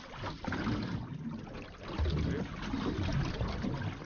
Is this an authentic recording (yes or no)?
yes